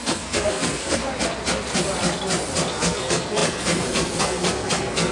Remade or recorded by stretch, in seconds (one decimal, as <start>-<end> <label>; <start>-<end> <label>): 0.0-1.0 remade; 1.0-2.7 recorded; 2.7-5.1 remade